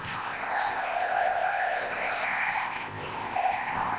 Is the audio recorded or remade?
remade